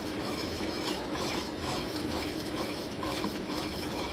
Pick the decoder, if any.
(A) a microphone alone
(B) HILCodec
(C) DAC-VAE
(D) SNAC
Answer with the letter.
C